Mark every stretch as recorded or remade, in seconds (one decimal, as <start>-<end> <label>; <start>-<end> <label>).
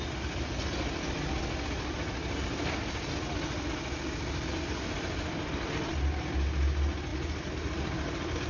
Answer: 0.0-7.1 recorded; 7.1-8.5 remade